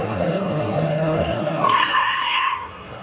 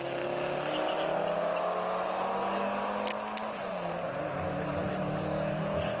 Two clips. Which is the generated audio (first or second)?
first